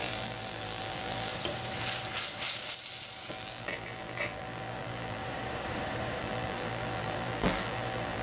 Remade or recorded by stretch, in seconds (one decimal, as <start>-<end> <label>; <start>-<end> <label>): 0.0-1.3 remade; 1.3-3.3 recorded; 3.3-5.2 remade; 5.2-6.2 recorded; 6.2-8.2 remade